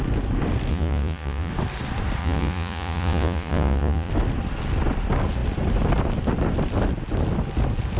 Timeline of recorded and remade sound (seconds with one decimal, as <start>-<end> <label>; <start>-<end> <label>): 0.0-0.7 recorded; 0.7-1.5 remade; 1.5-2.2 recorded; 2.2-4.1 remade; 4.1-8.0 recorded